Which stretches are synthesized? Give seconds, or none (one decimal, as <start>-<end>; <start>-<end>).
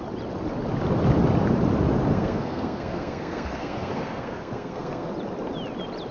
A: 2.1-5.1